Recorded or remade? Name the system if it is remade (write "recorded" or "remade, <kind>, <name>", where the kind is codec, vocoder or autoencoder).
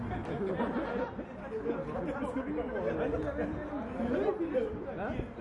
recorded